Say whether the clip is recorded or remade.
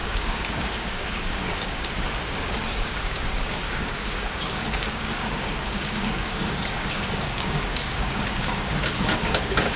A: remade